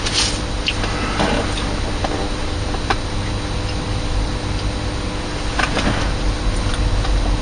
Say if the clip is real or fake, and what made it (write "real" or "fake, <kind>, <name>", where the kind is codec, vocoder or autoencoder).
real